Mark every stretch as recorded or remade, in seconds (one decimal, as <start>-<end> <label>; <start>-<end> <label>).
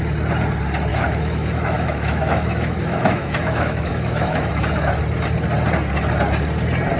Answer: 0.0-0.9 recorded; 0.9-4.5 remade; 4.5-7.0 recorded